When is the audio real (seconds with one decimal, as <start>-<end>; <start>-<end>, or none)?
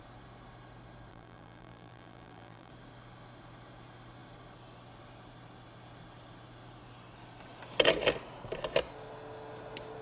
0.0-1.1; 2.7-10.0